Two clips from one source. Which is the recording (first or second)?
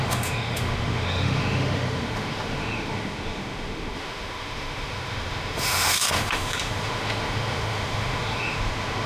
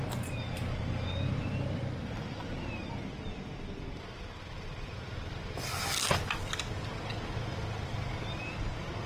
second